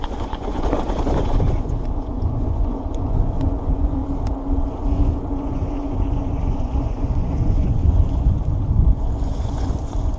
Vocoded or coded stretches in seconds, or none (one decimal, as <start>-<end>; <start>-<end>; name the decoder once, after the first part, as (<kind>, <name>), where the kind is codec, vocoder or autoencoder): 0.0-4.0 (vocoder, Vocos); 4.6-10.2